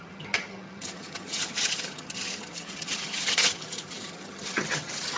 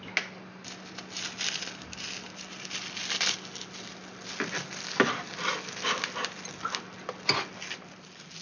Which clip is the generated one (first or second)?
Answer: first